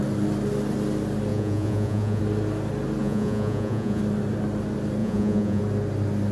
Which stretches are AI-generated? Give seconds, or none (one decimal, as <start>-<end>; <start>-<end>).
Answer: 1.3-2.2; 3.0-4.0; 5.0-5.6